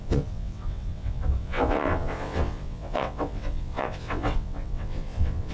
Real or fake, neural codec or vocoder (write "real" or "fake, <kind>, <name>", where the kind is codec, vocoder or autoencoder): fake, vocoder, WaveNeXt